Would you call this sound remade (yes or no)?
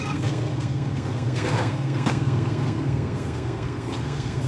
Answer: yes